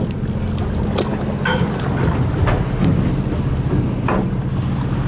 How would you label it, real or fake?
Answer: real